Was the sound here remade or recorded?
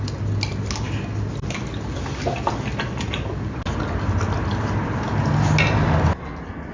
recorded